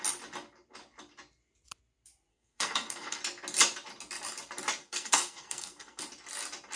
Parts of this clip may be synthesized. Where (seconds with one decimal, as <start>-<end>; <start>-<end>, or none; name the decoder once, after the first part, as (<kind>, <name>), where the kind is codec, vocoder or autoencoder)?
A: 2.3-3.2 (codec, SNAC); 4.8-6.0